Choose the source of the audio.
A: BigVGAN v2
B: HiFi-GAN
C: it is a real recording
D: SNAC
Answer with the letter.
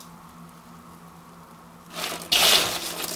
C